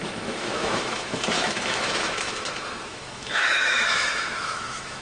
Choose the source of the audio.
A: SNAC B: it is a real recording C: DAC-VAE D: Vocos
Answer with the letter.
C